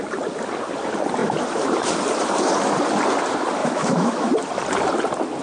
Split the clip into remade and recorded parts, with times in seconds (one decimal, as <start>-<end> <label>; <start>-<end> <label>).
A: 0.0-3.6 recorded; 3.6-4.3 remade; 4.3-5.4 recorded